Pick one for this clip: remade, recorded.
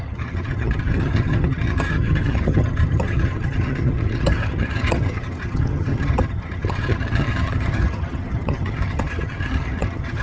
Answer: remade